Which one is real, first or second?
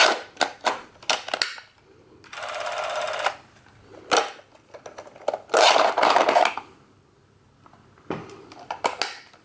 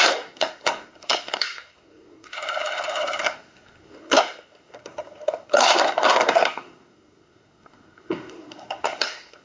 first